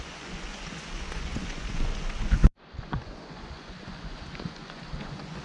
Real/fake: fake